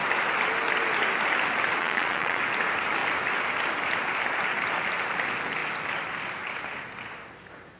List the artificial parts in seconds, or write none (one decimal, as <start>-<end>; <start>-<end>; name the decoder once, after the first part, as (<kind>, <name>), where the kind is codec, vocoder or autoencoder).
1.8-2.4 (vocoder, Vocos)